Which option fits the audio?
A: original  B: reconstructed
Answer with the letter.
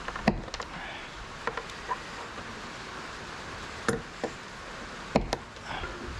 A